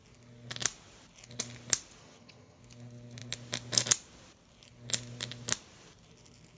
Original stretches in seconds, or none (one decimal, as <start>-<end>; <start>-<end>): 0.0-2.0; 2.6-6.6